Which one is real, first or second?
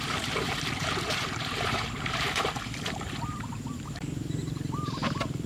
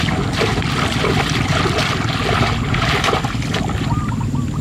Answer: second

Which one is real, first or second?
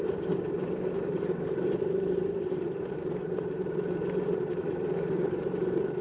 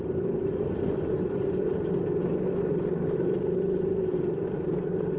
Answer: second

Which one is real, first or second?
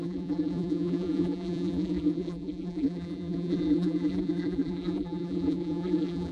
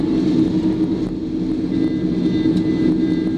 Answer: second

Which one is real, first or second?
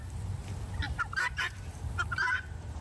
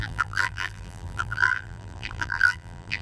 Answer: first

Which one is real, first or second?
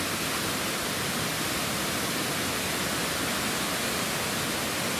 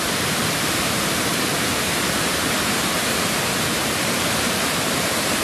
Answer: first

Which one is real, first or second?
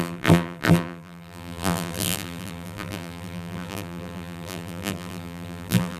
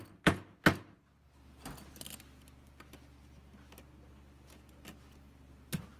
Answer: second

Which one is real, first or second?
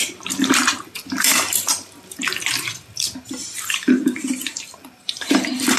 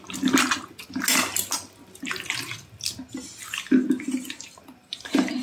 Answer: second